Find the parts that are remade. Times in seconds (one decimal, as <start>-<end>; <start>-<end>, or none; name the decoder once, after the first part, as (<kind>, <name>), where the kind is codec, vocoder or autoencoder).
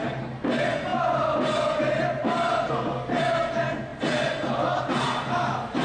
0.9-2.7 (vocoder, BigVGAN v2)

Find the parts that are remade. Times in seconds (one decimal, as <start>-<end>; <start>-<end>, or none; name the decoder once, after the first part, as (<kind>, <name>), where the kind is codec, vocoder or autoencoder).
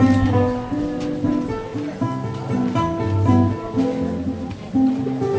none